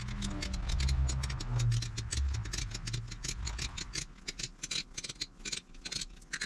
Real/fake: real